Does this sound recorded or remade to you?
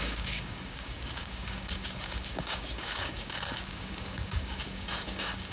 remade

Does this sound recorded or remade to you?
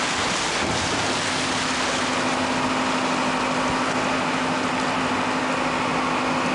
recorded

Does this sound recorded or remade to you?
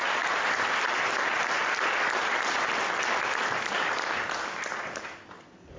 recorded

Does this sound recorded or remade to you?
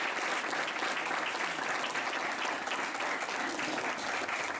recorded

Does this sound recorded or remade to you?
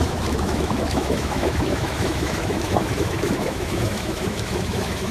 remade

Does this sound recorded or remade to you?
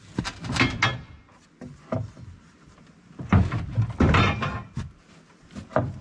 recorded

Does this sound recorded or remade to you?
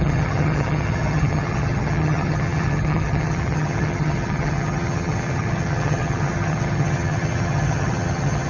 remade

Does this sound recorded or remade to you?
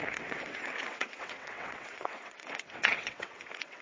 remade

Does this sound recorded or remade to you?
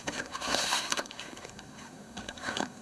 remade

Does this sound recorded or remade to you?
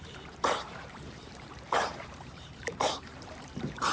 remade